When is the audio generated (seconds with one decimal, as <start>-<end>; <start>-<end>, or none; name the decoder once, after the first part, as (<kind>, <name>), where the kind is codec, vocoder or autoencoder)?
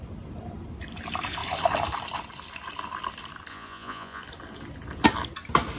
3.5-4.2 (vocoder, Vocos)